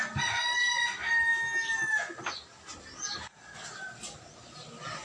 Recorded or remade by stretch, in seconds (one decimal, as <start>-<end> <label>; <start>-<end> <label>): 0.0-5.0 recorded